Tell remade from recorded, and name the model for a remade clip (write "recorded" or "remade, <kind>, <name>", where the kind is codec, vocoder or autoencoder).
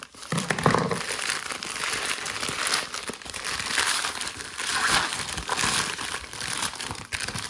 remade, vocoder, BigVGAN v2